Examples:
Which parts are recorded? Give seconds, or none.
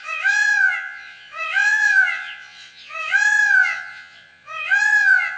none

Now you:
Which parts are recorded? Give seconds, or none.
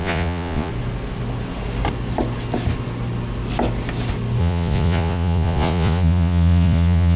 0.7-4.4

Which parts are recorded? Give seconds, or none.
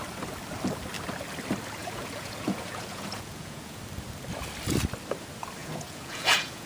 0.0-1.8; 3.8-5.6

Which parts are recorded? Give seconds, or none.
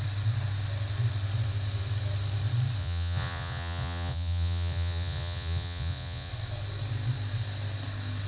0.0-2.8; 6.3-8.3